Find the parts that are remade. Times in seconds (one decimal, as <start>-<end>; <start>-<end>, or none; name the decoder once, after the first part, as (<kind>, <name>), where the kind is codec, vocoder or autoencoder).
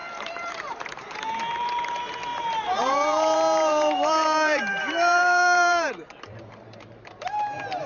0.0-1.2 (vocoder, BigVGAN v2); 2.3-6.4